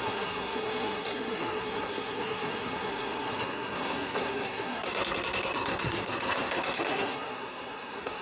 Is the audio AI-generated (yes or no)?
yes